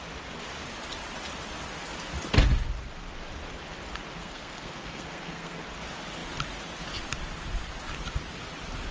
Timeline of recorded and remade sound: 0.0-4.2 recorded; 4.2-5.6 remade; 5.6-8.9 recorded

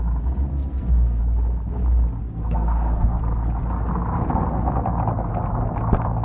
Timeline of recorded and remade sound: 0.0-0.5 recorded; 0.5-1.2 remade; 1.2-2.2 recorded; 2.2-3.2 remade; 3.2-6.2 recorded